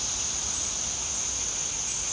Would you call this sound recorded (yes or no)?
yes